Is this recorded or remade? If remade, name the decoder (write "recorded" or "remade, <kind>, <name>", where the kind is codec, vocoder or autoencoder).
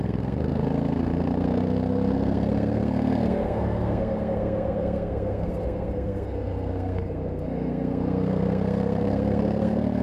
remade, codec, SNAC